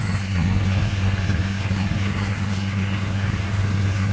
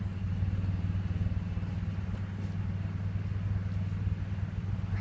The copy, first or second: first